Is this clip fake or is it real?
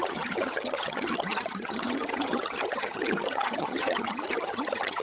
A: fake